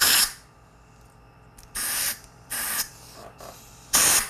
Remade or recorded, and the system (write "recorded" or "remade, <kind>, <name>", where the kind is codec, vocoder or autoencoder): remade, vocoder, BigVGAN v2